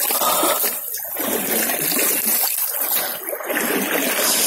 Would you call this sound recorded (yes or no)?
yes